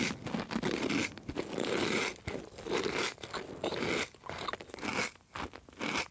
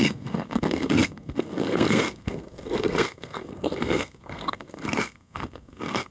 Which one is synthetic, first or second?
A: second